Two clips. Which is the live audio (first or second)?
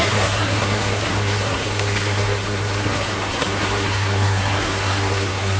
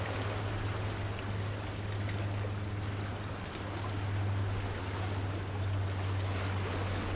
second